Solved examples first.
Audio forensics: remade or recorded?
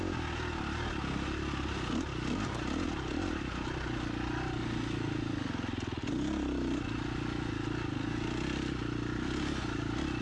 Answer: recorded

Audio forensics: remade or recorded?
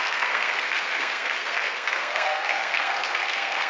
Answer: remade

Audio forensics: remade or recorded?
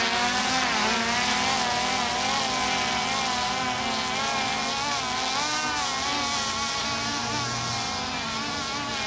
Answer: recorded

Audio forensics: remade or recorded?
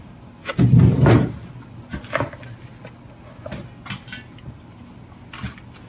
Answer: recorded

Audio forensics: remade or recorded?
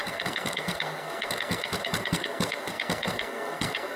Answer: remade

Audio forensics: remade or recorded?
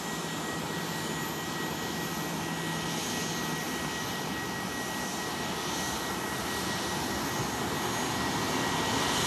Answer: recorded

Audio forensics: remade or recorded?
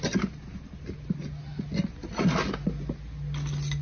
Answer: recorded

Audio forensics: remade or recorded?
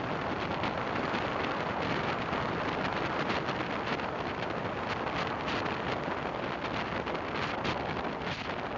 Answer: recorded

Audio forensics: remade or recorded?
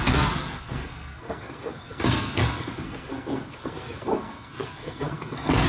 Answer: remade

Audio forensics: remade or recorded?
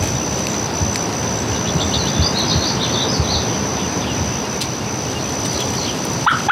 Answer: recorded